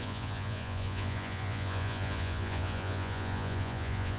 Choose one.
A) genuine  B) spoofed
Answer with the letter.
B